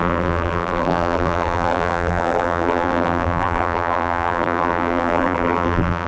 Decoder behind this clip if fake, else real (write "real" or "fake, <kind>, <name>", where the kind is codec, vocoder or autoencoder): fake, vocoder, BigVGAN v2